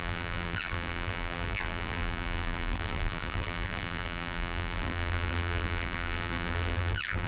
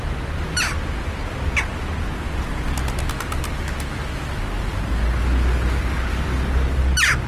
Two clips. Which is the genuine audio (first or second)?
second